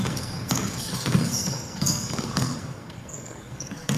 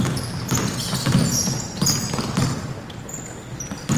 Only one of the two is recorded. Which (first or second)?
second